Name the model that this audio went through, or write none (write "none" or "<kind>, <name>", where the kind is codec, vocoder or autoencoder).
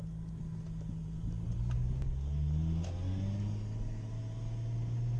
none